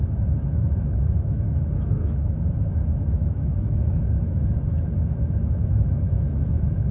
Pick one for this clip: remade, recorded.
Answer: remade